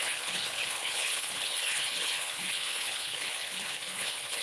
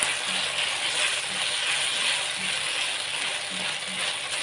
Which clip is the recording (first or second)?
second